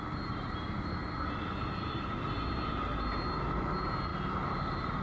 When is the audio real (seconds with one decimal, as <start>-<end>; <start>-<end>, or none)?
0.0-5.0